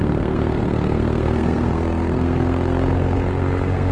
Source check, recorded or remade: remade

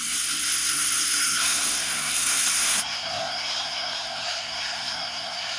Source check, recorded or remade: remade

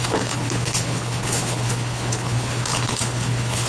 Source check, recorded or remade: remade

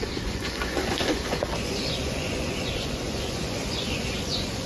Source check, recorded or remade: remade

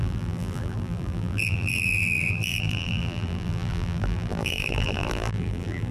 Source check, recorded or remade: remade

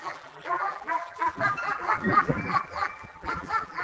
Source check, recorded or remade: remade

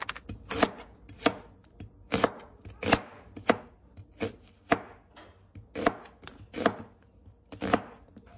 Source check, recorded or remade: recorded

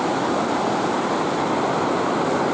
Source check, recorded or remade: recorded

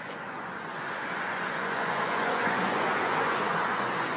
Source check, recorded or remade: remade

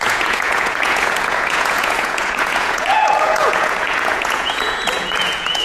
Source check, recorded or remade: remade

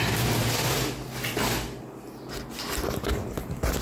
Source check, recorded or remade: recorded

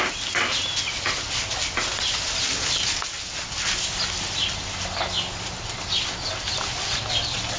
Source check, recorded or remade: recorded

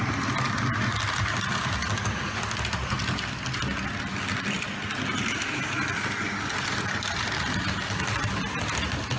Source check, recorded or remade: recorded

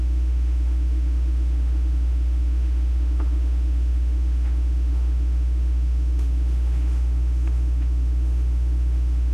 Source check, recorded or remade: remade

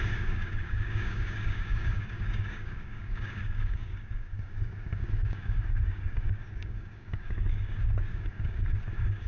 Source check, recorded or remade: remade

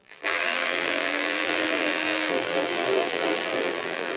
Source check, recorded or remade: remade